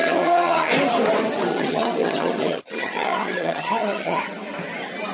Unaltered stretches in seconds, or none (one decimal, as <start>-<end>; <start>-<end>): 0.7-1.5; 4.2-5.1